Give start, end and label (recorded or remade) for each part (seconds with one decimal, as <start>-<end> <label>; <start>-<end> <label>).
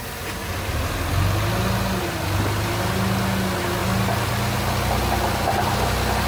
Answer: 0.0-6.3 recorded